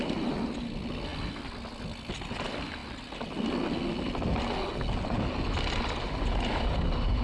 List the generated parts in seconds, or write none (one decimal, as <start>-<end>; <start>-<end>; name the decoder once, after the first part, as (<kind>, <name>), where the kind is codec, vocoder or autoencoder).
none

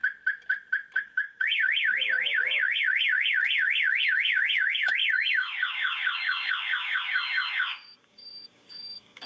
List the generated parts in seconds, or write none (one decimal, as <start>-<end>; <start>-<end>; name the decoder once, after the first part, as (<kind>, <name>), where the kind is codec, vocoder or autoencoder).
1.0-9.3 (codec, DAC)

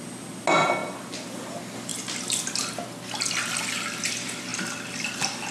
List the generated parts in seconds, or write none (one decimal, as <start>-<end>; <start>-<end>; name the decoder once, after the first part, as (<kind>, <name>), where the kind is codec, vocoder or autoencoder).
none

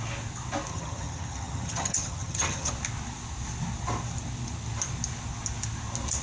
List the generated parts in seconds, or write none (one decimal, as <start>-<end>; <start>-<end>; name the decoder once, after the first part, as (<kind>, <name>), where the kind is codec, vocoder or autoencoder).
0.7-2.7 (vocoder, HiFi-GAN)

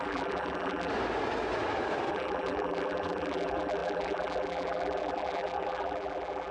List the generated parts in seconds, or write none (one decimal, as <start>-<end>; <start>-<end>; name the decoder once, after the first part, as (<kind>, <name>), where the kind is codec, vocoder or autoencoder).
0.0-0.9 (vocoder, BigVGAN v2); 2.1-6.5

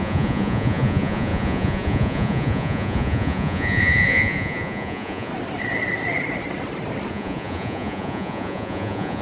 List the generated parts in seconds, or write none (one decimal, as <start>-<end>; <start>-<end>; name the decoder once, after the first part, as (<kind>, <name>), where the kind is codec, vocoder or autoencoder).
0.0-5.3 (vocoder, Vocos); 7.1-9.2

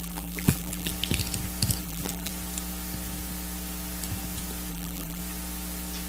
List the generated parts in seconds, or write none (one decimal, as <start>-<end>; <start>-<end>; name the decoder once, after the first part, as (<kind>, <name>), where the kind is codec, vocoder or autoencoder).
0.0-0.9 (vocoder, BigVGAN v2); 1.8-2.3; 4.7-5.2